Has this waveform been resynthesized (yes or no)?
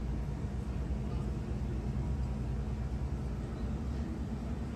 no